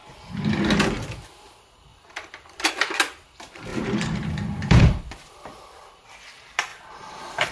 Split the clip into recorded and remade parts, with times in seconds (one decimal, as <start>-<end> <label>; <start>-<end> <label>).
0.0-1.9 recorded; 1.9-2.7 remade; 2.7-3.7 recorded; 3.7-6.0 remade; 6.0-7.5 recorded